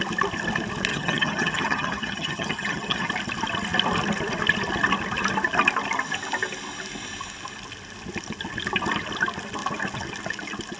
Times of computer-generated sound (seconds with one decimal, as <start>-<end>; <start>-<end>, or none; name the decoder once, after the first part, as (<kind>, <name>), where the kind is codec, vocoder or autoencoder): 0.9-3.1 (vocoder, HiFi-GAN)